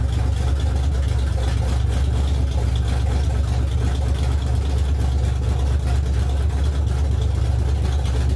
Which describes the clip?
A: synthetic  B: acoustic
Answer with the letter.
B